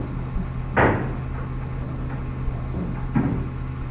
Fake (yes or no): no